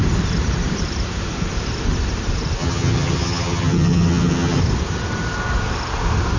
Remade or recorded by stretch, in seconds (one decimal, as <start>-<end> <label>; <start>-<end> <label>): 0.0-2.6 recorded; 2.6-4.6 remade; 4.6-6.4 recorded